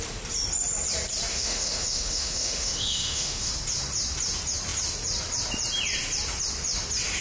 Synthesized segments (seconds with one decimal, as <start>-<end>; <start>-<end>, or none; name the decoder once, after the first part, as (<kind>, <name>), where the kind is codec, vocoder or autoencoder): 1.3-3.5 (autoencoder, DAC-VAE)